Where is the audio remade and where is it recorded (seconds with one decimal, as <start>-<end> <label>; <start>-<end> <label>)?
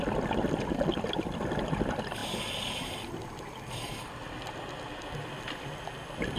0.0-6.4 recorded